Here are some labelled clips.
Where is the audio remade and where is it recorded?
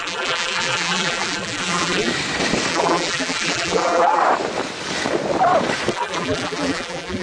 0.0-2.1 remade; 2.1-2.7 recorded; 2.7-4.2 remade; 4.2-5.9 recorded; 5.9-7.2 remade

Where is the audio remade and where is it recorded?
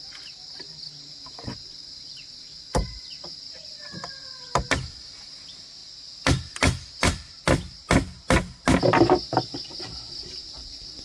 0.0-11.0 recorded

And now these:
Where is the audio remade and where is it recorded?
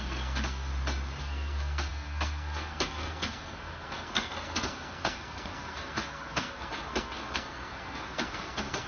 0.0-0.7 remade; 0.7-1.2 recorded; 1.2-8.9 remade